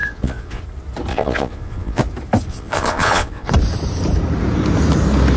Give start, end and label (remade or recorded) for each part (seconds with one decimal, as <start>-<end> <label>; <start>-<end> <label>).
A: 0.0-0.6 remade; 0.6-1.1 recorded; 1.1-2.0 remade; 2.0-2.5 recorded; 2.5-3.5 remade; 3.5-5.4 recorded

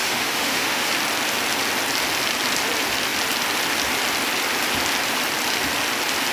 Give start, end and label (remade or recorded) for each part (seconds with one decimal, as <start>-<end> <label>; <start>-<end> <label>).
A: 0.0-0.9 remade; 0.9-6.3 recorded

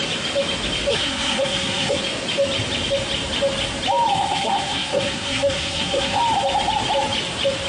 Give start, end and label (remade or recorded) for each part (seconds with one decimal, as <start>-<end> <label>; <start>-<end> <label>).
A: 0.0-0.9 recorded; 0.9-2.0 remade; 2.0-4.1 recorded; 4.1-6.2 remade; 6.2-7.7 recorded

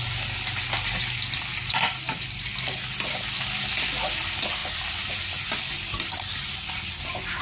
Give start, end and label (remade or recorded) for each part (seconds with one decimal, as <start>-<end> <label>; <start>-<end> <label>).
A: 0.0-7.4 recorded

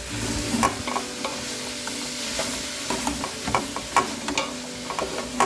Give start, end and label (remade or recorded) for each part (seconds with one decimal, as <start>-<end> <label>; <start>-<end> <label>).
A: 0.0-5.5 recorded

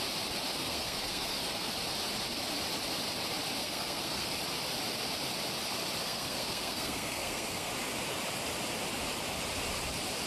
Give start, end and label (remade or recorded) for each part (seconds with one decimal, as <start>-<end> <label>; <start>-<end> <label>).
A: 0.0-0.6 recorded; 0.6-1.7 remade; 1.7-3.6 recorded; 3.6-4.3 remade; 4.3-6.0 recorded; 6.0-7.7 remade; 7.7-10.3 recorded

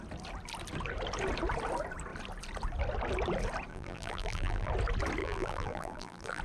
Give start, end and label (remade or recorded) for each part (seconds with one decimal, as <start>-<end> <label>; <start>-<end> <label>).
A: 0.0-3.7 recorded; 3.7-4.7 remade; 4.7-5.2 recorded; 5.2-6.4 remade